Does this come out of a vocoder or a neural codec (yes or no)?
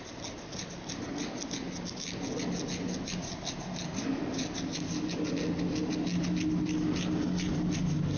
no